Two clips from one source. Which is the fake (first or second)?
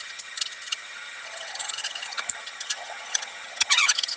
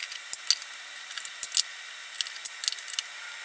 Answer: first